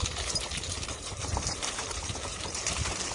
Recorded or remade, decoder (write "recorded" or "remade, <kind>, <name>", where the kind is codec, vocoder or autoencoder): remade, vocoder, BigVGAN v2